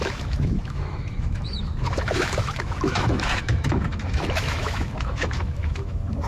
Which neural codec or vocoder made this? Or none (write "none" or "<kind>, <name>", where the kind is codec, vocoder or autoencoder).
autoencoder, DAC-VAE